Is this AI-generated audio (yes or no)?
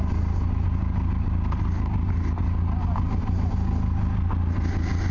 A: no